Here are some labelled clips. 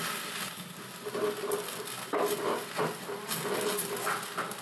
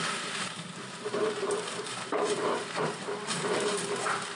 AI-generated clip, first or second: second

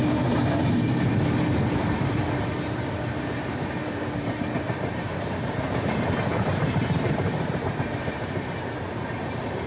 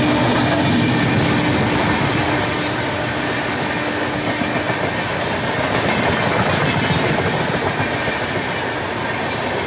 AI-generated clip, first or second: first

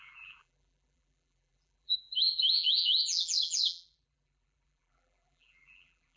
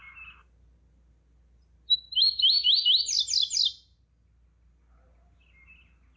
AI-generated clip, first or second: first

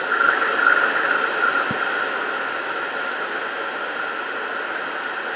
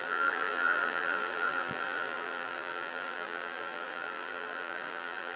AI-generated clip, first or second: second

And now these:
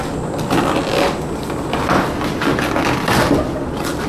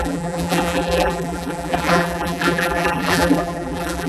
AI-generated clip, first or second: second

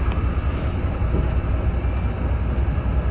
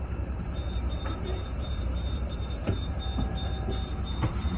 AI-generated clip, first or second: second